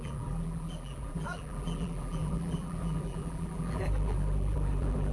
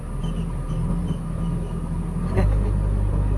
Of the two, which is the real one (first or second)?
second